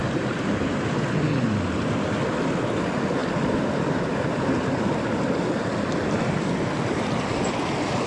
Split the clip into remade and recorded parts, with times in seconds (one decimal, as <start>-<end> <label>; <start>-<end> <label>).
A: 0.0-8.1 recorded